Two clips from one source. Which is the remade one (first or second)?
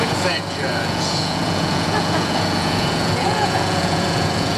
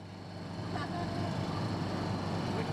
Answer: first